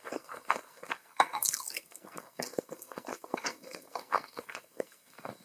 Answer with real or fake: fake